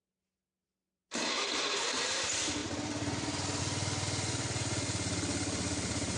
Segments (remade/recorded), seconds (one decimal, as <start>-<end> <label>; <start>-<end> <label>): 0.0-6.2 recorded